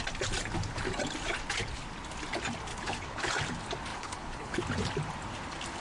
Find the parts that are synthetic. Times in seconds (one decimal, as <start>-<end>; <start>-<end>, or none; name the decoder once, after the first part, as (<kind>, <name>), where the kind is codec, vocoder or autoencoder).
2.7-3.3 (codec, HILCodec); 3.9-4.6